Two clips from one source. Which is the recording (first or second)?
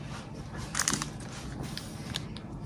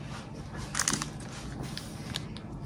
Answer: second